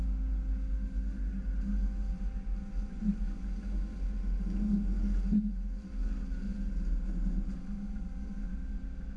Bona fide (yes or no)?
yes